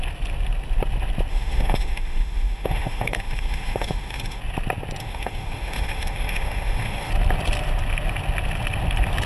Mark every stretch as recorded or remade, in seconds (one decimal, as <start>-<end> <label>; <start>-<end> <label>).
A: 0.0-1.3 recorded; 1.3-4.4 remade; 4.4-5.0 recorded; 5.0-7.1 remade; 7.1-9.3 recorded